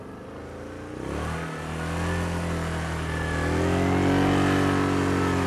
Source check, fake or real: real